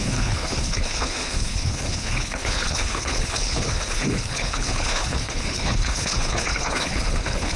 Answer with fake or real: fake